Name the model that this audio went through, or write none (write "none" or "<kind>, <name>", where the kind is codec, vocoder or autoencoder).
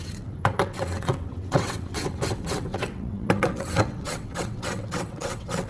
vocoder, WaveNeXt